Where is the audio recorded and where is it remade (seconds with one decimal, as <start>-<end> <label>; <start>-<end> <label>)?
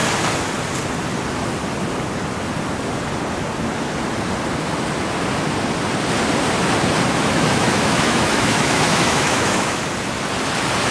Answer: 0.0-7.3 recorded; 7.3-9.8 remade; 9.8-10.9 recorded